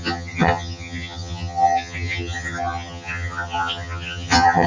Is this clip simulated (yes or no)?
yes